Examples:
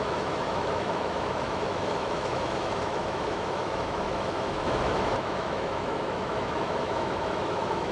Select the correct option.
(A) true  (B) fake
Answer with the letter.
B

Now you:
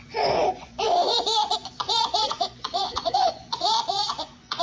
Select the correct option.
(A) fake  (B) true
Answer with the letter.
A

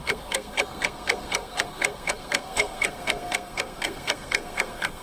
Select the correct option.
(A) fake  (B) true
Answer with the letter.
A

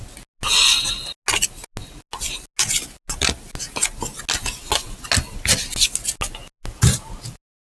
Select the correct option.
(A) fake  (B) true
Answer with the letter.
B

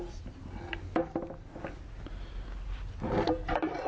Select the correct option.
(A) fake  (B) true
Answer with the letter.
B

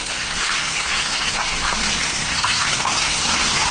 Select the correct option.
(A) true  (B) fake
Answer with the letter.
B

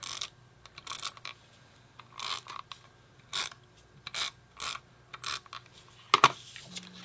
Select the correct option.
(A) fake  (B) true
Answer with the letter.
B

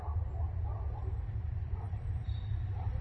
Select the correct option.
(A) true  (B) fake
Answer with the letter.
B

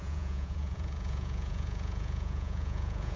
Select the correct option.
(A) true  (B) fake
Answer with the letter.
B